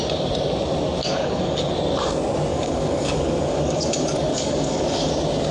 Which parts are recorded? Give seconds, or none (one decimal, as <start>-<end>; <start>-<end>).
0.0-1.0; 1.7-2.5; 5.1-5.5